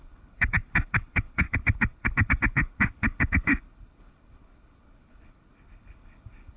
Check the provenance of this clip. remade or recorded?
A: remade